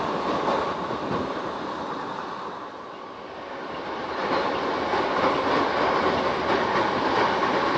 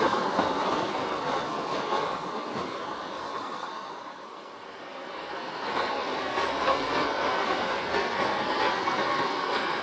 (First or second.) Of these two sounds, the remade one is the second